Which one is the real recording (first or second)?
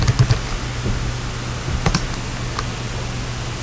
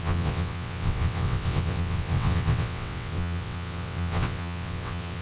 first